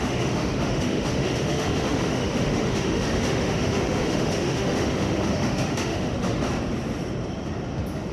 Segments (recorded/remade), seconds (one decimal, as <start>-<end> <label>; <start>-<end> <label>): 0.0-6.5 remade; 6.5-8.1 recorded